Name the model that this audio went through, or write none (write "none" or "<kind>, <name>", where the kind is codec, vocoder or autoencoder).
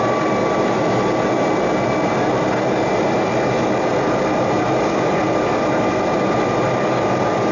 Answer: none